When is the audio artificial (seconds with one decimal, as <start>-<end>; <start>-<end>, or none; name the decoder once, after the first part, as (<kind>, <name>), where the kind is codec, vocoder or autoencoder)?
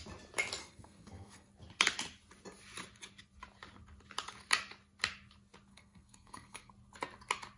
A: 0.6-1.5 (codec, SNAC); 5.7-6.7